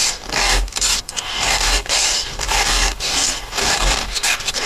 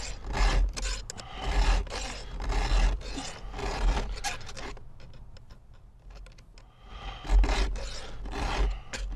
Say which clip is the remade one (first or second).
first